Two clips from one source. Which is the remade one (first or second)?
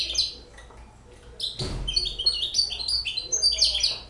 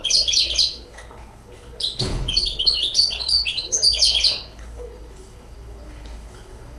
second